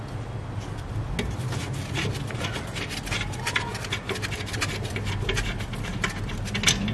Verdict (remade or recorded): recorded